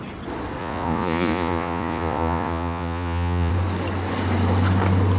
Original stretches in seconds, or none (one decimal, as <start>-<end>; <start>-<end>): 0.0-0.6; 3.5-5.2